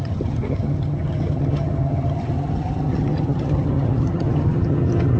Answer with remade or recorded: remade